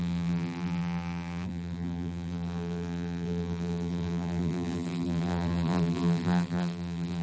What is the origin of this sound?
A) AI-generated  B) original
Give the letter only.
A